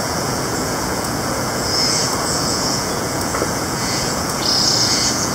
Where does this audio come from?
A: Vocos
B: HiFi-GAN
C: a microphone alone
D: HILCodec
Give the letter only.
A